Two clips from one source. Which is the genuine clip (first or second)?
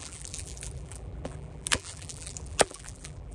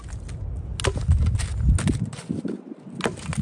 second